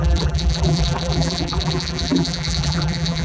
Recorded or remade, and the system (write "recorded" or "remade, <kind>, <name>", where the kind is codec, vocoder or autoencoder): remade, vocoder, BigVGAN v2